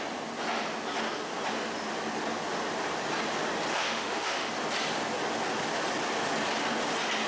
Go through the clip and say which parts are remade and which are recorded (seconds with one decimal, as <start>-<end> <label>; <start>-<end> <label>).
0.0-3.7 recorded; 3.7-4.5 remade; 4.5-7.3 recorded